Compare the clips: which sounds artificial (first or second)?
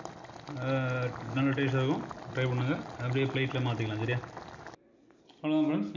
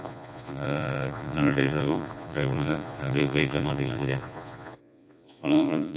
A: second